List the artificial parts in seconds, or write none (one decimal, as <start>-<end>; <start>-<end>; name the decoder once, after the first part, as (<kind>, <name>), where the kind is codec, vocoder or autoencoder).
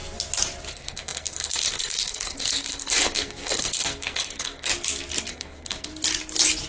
0.7-4.7 (codec, SNAC); 5.3-5.9